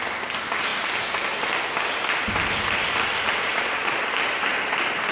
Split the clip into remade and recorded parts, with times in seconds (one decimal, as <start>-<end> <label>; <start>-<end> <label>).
0.0-3.5 recorded; 3.5-4.0 remade; 4.0-5.1 recorded

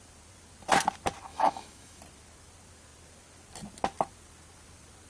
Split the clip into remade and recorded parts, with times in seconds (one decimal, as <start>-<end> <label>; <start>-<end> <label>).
0.0-1.3 recorded; 1.3-2.0 remade; 2.0-5.1 recorded

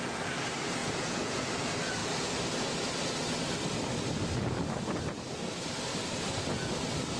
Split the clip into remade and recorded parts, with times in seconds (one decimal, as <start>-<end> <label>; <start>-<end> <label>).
0.0-0.8 recorded; 0.8-1.5 remade; 1.5-7.2 recorded

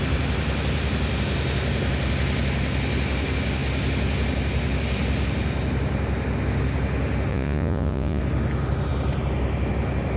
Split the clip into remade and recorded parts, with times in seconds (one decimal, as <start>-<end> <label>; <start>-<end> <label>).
0.0-7.3 recorded; 7.3-8.2 remade; 8.2-10.2 recorded